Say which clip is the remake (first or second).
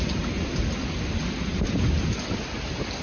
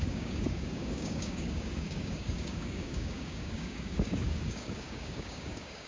second